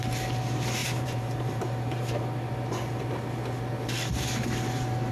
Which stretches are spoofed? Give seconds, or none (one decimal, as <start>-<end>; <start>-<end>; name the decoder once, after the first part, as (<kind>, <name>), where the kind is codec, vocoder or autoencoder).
0.8-2.2 (vocoder, BigVGAN v2)